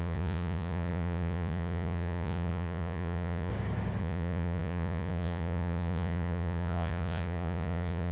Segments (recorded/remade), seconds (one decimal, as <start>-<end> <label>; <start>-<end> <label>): 0.0-3.5 remade; 3.5-4.0 recorded; 4.0-8.1 remade